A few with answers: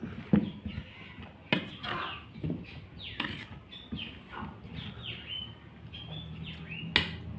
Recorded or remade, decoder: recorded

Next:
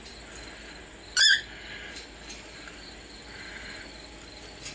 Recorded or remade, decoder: recorded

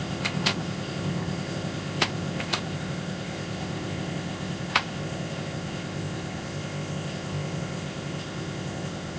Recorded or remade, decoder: remade, codec, ZipCodec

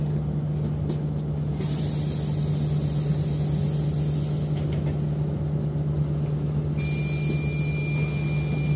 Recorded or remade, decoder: recorded